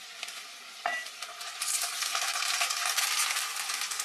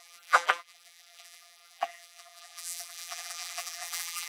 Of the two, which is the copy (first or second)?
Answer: second